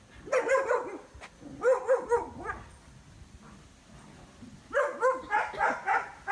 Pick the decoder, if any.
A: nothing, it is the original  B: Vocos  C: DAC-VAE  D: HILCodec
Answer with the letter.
A